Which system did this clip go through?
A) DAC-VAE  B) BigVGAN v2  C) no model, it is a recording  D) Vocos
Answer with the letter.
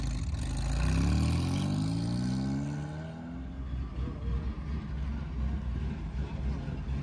C